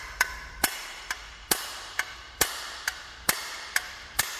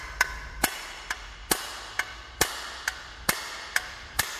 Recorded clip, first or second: second